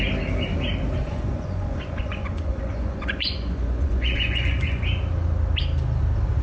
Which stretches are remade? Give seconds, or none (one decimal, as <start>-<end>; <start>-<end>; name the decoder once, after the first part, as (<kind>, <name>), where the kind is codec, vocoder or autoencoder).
1.0-4.8 (vocoder, Vocos)